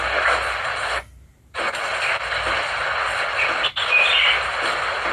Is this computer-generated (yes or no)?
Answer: no